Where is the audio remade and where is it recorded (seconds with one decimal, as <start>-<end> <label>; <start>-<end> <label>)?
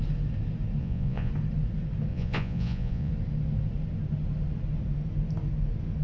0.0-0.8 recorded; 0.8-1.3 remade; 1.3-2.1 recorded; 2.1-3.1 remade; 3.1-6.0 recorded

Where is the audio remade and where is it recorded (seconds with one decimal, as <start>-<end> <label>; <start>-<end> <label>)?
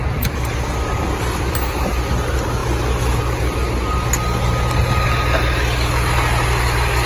0.0-7.1 recorded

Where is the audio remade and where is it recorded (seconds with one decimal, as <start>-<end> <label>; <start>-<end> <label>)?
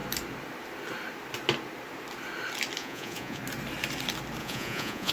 0.0-2.8 recorded; 2.8-3.4 remade; 3.4-4.4 recorded; 4.4-5.1 remade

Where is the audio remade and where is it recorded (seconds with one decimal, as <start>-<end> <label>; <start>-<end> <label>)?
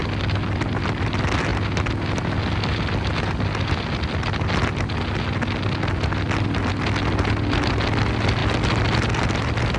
0.0-9.8 recorded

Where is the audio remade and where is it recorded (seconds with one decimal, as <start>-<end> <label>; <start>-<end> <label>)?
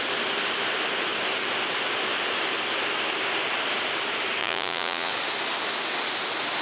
0.0-4.4 recorded; 4.4-5.1 remade; 5.1-6.6 recorded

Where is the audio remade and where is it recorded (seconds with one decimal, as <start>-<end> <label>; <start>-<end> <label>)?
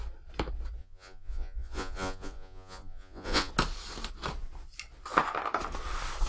0.0-0.8 recorded; 0.8-3.5 remade; 3.5-6.3 recorded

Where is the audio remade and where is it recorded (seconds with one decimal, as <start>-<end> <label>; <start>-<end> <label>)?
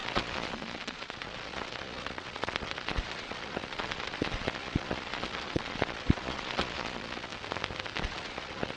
0.0-7.3 remade; 7.3-8.0 recorded; 8.0-8.8 remade